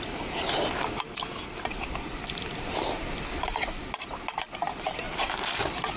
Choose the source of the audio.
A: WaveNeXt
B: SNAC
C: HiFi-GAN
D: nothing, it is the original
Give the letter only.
D